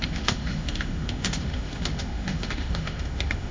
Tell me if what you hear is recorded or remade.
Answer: remade